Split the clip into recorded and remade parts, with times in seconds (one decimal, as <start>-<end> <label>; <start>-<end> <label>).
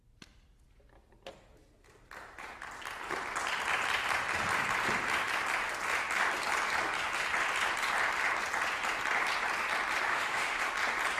0.0-10.1 recorded; 10.1-10.6 remade; 10.6-11.2 recorded